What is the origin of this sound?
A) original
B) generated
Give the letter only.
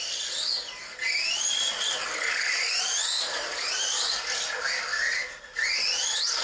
A